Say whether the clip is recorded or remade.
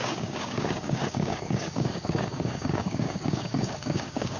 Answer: remade